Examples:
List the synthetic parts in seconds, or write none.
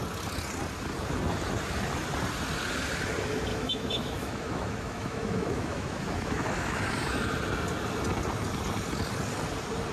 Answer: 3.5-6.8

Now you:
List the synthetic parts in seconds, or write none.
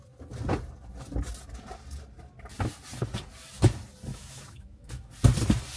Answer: 4.1-5.1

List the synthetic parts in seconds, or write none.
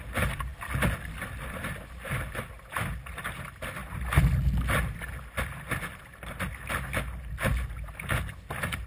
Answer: none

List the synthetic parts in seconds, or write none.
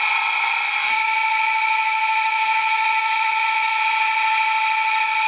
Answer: 0.8-3.8